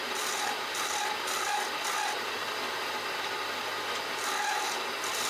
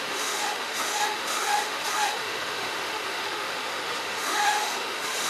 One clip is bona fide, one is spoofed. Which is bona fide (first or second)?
first